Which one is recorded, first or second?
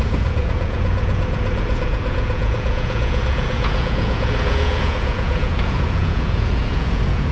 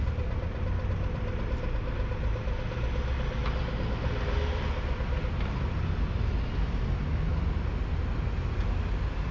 second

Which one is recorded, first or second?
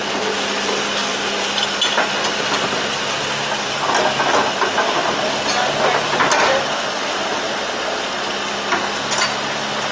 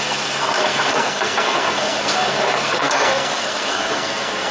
first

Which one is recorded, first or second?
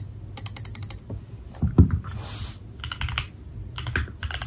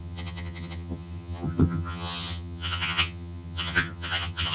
first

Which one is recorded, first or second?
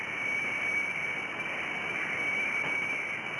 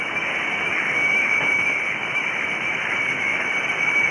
first